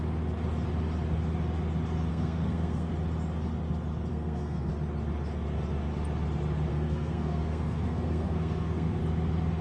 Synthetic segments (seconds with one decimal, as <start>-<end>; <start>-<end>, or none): 2.1-2.9; 4.1-4.7; 6.7-9.0